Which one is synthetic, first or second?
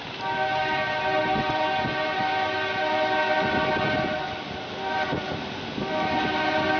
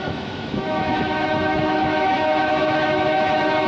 second